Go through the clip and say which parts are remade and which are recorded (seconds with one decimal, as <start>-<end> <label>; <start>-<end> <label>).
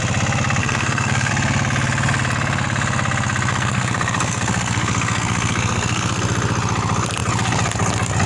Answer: 0.0-0.6 recorded; 0.6-1.3 remade; 1.3-3.5 recorded; 3.5-6.2 remade; 6.2-8.3 recorded